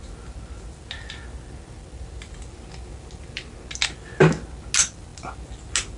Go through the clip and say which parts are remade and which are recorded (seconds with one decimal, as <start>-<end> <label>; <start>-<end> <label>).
0.0-6.0 recorded